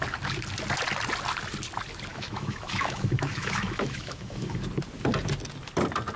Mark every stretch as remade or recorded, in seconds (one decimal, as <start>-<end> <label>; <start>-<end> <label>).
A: 0.0-2.1 recorded; 2.1-4.6 remade; 4.6-6.2 recorded